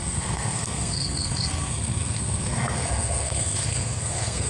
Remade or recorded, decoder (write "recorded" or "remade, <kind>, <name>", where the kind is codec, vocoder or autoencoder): remade, codec, SNAC